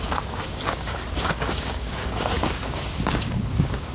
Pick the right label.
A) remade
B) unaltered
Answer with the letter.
A